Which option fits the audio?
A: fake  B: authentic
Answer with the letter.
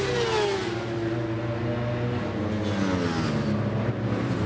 B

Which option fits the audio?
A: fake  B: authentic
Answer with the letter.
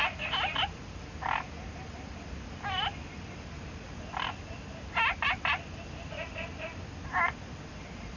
B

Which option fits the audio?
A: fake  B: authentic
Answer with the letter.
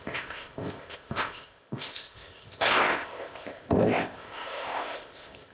A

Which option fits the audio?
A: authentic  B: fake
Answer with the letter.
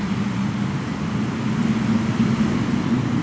A